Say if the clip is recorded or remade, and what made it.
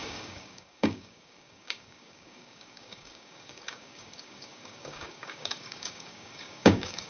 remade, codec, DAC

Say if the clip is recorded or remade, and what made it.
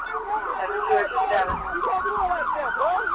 recorded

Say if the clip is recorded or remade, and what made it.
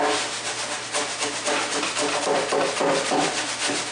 recorded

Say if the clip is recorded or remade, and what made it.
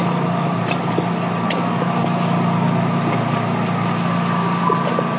recorded